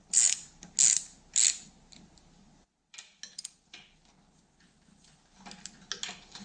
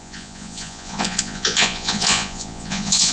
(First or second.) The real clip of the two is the first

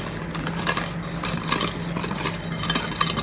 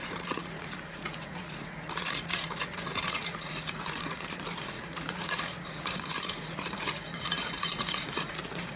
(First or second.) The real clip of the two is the first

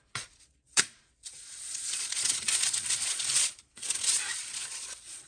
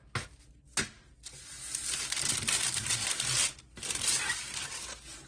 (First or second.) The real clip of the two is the second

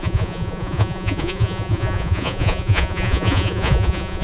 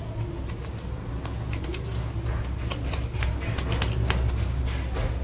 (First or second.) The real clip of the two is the second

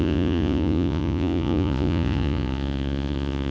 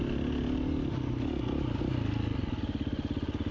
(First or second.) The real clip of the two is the second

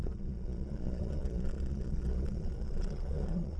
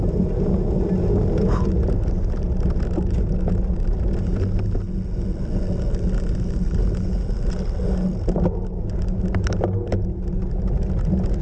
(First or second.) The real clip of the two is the second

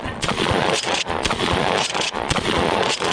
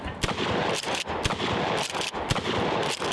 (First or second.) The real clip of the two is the second